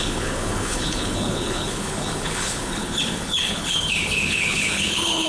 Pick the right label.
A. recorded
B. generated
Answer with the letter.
B